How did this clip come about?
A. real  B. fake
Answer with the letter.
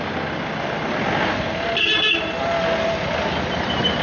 A